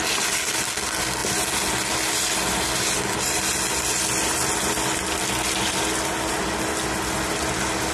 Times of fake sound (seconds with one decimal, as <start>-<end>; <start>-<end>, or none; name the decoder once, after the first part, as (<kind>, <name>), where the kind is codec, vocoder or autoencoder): none